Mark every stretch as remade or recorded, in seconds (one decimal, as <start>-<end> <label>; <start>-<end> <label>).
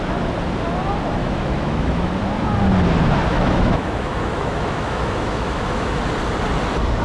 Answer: 0.0-1.2 recorded; 1.2-2.1 remade; 2.1-3.3 recorded; 3.3-6.0 remade; 6.0-7.0 recorded